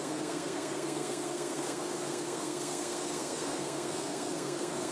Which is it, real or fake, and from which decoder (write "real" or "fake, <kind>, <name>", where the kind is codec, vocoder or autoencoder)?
fake, codec, SNAC